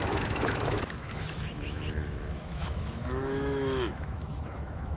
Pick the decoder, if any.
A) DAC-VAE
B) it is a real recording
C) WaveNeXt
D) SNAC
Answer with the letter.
A